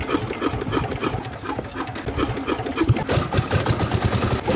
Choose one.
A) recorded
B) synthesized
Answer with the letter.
A